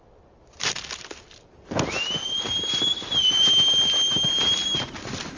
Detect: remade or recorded recorded